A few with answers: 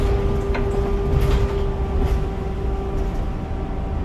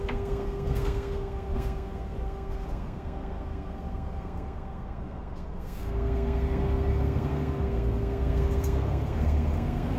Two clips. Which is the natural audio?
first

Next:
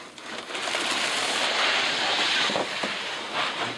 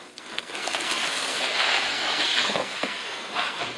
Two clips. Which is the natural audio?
first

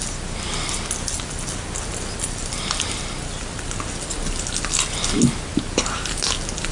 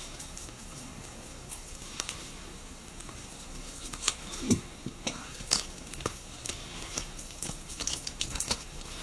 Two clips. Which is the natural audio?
first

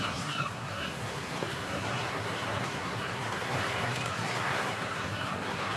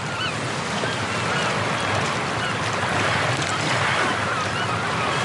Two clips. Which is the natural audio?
second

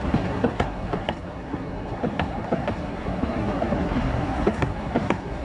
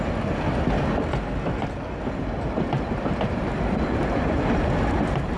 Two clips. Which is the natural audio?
second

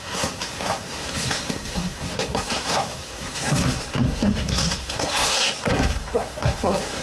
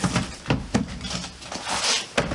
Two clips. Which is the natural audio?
second